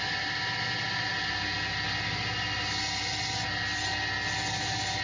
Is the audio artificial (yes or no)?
no